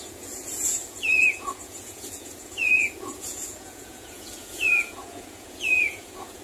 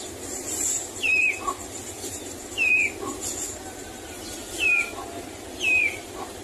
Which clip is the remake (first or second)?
first